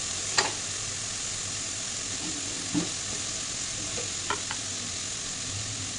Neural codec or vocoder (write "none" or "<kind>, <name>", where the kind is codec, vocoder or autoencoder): none